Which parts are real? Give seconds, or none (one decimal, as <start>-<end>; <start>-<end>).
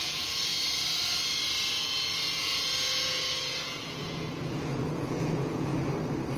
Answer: 0.5-1.8; 5.7-6.4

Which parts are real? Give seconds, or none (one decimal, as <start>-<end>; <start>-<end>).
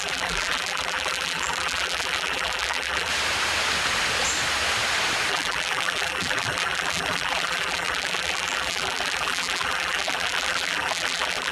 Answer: 3.1-5.3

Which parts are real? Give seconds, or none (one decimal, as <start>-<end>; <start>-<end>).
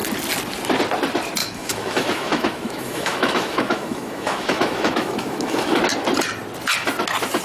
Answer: 0.0-1.4; 5.8-7.4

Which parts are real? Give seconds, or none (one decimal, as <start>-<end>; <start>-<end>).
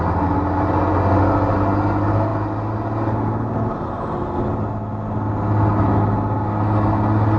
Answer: 0.0-7.4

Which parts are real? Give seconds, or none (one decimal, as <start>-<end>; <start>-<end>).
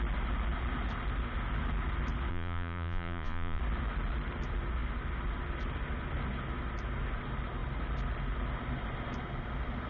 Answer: 0.0-2.3; 3.6-9.9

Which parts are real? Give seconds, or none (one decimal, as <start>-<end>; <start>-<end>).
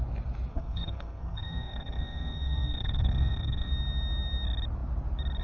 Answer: 0.0-0.5; 3.7-5.4